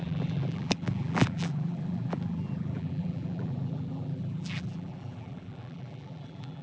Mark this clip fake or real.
fake